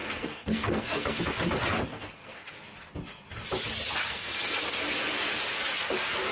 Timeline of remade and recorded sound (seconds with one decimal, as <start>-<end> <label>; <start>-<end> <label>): 0.0-1.2 remade; 1.2-1.9 recorded; 1.9-2.5 remade; 2.5-4.0 recorded; 4.0-4.8 remade; 4.8-6.3 recorded

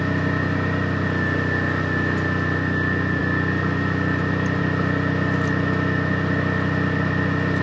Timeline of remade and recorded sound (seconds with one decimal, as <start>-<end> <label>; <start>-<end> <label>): 0.0-7.6 recorded

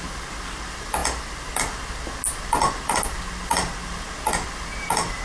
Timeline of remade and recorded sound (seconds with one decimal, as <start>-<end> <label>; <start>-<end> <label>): 0.0-5.2 recorded